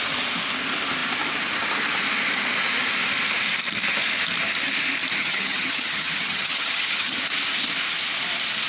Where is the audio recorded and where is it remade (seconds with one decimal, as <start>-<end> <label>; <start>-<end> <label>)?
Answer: 0.0-5.2 recorded; 5.2-7.2 remade; 7.2-8.7 recorded